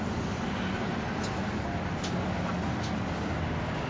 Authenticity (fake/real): real